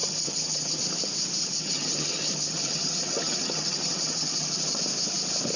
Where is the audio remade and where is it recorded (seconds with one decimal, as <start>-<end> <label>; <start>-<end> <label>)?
0.0-0.8 remade; 0.8-1.4 recorded; 1.4-4.8 remade; 4.8-5.6 recorded